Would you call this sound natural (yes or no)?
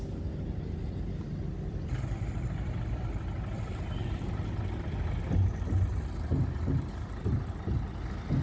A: yes